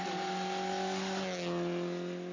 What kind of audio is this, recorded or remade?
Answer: recorded